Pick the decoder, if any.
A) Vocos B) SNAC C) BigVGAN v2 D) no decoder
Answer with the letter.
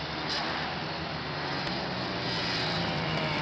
D